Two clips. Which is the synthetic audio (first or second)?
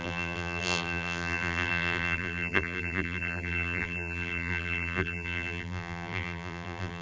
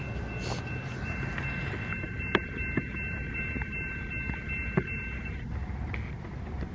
first